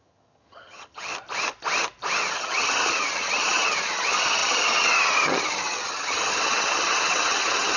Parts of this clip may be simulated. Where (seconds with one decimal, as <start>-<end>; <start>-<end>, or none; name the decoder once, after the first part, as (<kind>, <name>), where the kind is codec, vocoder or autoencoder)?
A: 0.0-1.1 (vocoder, HiFi-GAN); 2.3-7.8